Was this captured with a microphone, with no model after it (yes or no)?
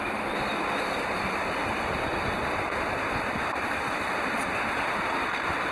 yes